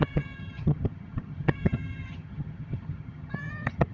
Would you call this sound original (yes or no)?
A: no